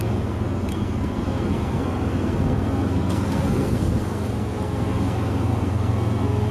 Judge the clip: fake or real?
fake